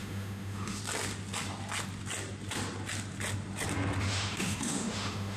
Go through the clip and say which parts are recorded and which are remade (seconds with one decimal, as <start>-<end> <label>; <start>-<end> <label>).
0.0-0.8 remade; 0.8-4.0 recorded; 4.0-5.4 remade